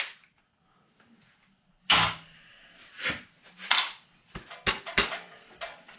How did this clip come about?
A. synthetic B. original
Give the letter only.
B